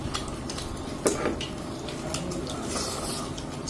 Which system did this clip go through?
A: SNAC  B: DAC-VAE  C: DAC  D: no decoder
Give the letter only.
D